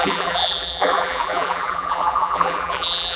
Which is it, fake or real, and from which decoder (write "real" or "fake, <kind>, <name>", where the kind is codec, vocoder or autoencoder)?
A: fake, vocoder, BigVGAN v2